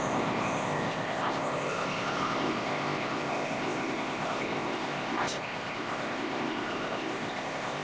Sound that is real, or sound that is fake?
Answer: fake